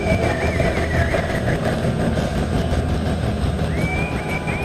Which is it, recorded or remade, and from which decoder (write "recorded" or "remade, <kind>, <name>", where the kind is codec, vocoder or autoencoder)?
recorded